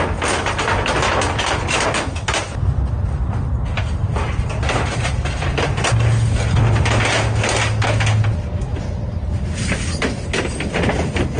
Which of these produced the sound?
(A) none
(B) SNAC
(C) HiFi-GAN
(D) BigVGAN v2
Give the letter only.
A